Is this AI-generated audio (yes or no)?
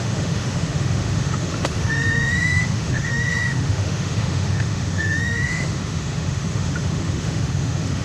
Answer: yes